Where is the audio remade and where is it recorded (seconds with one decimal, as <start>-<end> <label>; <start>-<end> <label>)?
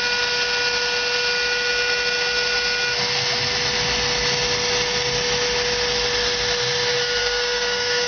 0.0-7.2 recorded; 7.2-8.1 remade